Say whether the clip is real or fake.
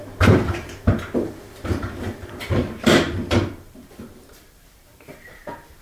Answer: fake